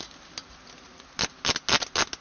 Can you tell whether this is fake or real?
real